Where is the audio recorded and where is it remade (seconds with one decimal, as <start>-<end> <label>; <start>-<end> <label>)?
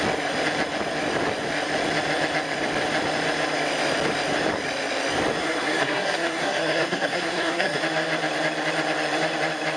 0.0-5.4 recorded; 5.4-7.8 remade; 7.8-9.8 recorded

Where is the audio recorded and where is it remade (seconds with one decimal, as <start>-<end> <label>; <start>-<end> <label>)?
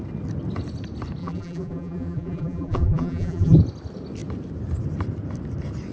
0.0-1.2 recorded; 1.2-3.6 remade; 3.6-5.9 recorded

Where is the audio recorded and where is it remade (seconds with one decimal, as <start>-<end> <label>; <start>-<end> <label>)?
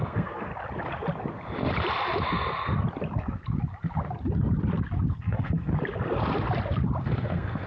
0.0-0.5 remade; 0.5-5.1 recorded; 5.1-5.7 remade; 5.7-7.0 recorded; 7.0-7.7 remade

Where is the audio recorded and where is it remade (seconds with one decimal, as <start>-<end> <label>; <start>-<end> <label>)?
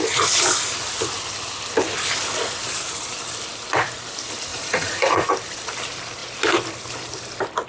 0.0-4.5 recorded; 4.5-5.3 remade; 5.3-7.7 recorded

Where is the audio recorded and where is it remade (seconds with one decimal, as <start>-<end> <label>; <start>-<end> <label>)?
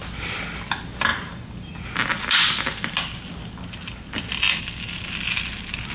0.0-5.9 recorded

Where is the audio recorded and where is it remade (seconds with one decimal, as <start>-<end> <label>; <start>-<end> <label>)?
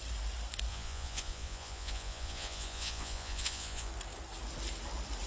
0.0-0.7 recorded; 0.7-3.9 remade; 3.9-5.3 recorded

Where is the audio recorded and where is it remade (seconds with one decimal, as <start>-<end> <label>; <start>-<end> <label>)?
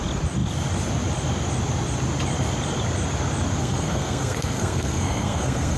0.0-3.6 recorded; 3.6-5.8 remade